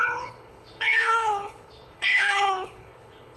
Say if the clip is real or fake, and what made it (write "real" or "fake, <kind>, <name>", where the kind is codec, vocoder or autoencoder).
fake, codec, HILCodec